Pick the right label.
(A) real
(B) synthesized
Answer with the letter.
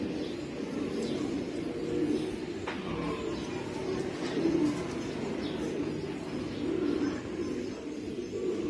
A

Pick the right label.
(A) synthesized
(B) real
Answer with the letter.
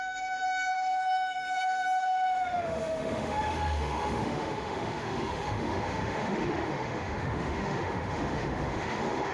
A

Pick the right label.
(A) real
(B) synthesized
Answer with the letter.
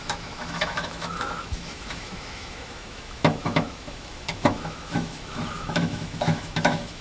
B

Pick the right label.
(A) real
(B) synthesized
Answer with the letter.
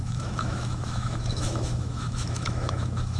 B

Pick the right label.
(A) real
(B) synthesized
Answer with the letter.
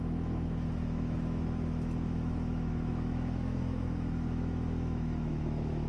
B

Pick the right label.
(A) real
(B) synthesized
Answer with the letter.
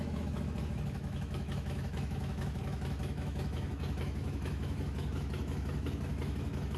B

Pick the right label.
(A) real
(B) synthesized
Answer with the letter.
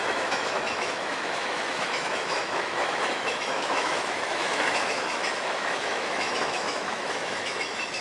B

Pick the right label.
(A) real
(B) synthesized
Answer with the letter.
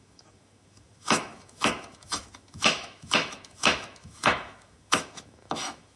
B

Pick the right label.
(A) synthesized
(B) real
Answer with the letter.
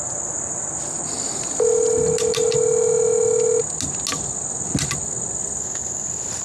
B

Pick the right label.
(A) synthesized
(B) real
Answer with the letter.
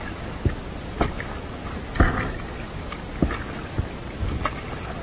B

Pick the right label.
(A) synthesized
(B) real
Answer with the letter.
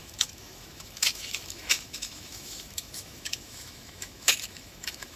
A